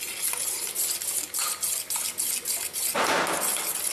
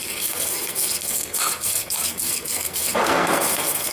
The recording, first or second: first